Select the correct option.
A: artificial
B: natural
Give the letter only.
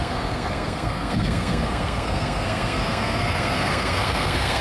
A